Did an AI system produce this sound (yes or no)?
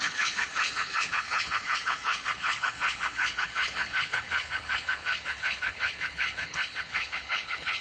yes